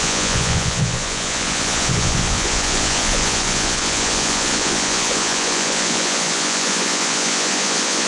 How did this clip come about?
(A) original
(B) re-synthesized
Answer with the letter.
B